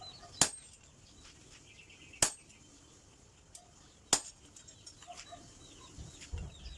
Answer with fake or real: real